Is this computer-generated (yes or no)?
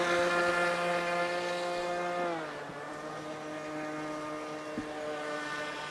no